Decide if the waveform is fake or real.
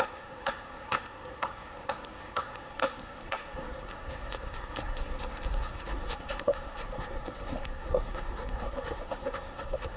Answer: fake